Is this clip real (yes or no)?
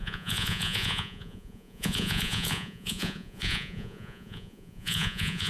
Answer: no